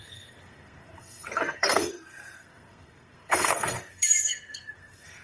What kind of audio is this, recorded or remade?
remade